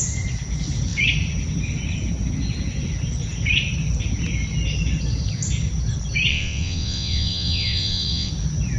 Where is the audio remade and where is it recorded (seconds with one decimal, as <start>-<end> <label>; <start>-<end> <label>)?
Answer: 0.0-6.3 recorded; 6.3-8.3 remade; 8.3-8.8 recorded